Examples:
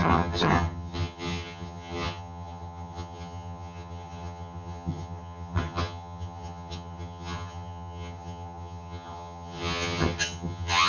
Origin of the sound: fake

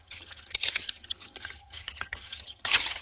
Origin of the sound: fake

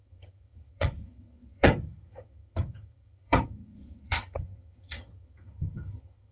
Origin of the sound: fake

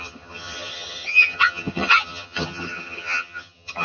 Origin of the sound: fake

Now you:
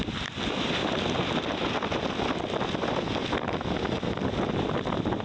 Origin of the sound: real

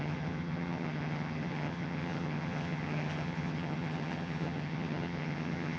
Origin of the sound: fake